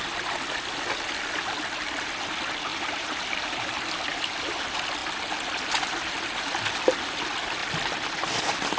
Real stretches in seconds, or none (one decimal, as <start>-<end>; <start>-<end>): 0.0-2.7; 3.7-8.8